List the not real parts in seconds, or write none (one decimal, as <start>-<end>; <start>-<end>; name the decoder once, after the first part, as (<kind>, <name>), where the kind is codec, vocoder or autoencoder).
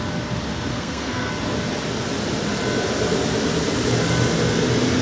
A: 0.7-1.3 (codec, SNAC)